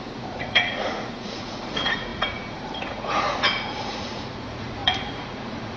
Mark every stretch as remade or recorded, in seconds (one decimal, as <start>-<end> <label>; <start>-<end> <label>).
0.0-5.8 remade